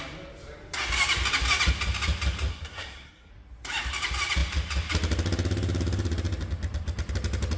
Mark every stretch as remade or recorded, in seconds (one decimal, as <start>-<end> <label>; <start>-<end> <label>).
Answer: 0.0-2.5 recorded; 2.5-3.3 remade; 3.3-7.6 recorded